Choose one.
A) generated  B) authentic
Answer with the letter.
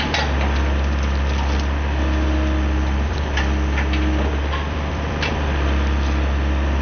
A